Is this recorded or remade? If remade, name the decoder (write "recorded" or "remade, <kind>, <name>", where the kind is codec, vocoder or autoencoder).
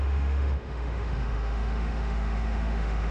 remade, autoencoder, DAC-VAE